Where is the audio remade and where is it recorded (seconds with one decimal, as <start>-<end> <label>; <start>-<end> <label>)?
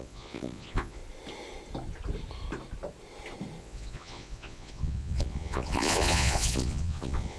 0.0-1.0 remade; 1.0-3.6 recorded; 3.6-7.4 remade